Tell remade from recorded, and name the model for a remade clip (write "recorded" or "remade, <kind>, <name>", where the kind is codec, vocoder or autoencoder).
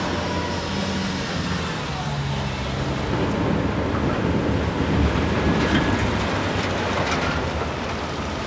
recorded